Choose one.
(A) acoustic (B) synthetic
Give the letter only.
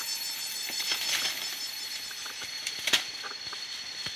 A